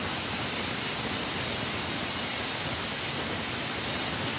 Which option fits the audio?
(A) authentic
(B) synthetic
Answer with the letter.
A